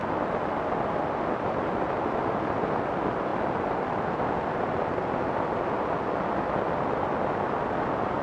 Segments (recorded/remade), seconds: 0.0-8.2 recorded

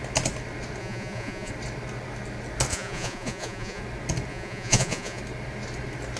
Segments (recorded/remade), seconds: 0.0-0.8 recorded; 0.8-1.5 remade; 1.5-2.7 recorded; 2.7-3.8 remade; 3.8-4.3 recorded; 4.3-5.2 remade; 5.2-6.2 recorded

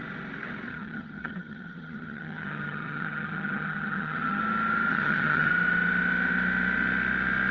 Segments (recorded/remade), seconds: 0.0-0.7 recorded; 0.7-4.4 remade; 4.4-4.9 recorded; 4.9-5.5 remade; 5.5-7.5 recorded

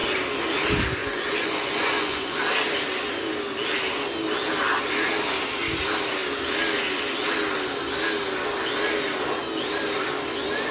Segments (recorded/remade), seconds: 0.0-1.0 recorded; 1.0-2.4 remade; 2.4-10.7 recorded